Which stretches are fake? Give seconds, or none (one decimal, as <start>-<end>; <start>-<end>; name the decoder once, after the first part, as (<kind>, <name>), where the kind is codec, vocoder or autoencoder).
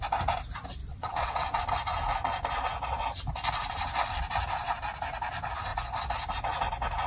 0.8-1.6 (vocoder, WaveNeXt)